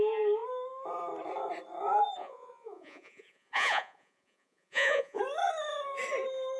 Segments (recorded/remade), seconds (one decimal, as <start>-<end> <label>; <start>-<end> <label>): 0.0-2.2 recorded; 2.2-5.2 remade; 5.2-6.6 recorded